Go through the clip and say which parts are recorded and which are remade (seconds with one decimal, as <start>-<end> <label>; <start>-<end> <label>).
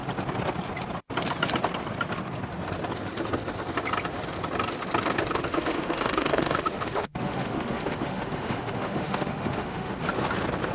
0.0-5.5 recorded; 5.5-9.9 remade; 9.9-10.7 recorded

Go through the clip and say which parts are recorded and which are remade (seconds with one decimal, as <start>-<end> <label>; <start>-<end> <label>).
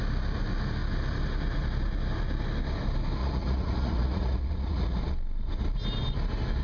0.0-3.2 recorded; 3.2-5.0 remade; 5.0-6.6 recorded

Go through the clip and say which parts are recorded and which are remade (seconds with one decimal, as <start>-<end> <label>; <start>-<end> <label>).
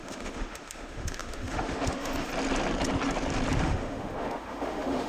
0.0-2.3 remade; 2.3-3.6 recorded; 3.6-5.1 remade